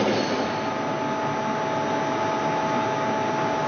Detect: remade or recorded recorded